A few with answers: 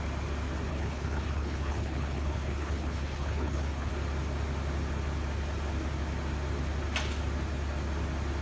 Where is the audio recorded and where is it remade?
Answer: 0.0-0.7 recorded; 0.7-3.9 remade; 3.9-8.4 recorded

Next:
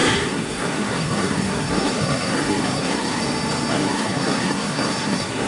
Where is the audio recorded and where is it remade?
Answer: 0.0-3.2 remade; 3.2-3.7 recorded; 3.7-5.5 remade

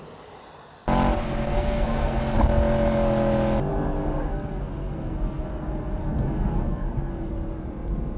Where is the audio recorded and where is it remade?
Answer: 0.0-1.5 recorded; 1.5-2.2 remade; 2.2-3.7 recorded; 3.7-7.3 remade; 7.3-8.2 recorded

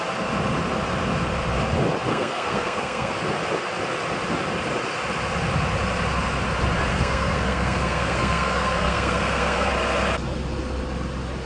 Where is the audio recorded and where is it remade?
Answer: 0.0-2.1 recorded; 2.1-3.1 remade; 3.1-6.9 recorded; 6.9-9.7 remade; 9.7-11.5 recorded

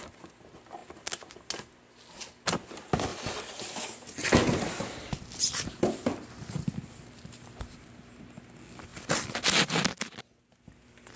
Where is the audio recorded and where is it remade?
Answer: 0.0-3.1 recorded; 3.1-8.2 remade; 8.2-8.9 recorded; 8.9-9.7 remade; 9.7-11.2 recorded

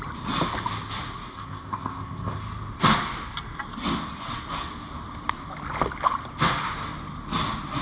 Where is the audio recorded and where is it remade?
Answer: 0.0-1.3 recorded; 1.3-2.4 remade; 2.4-7.8 recorded

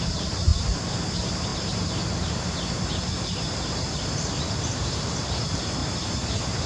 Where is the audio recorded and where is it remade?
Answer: 0.0-0.5 remade; 0.5-1.1 recorded; 1.1-5.8 remade; 5.8-6.7 recorded